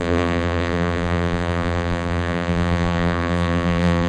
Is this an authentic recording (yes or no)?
no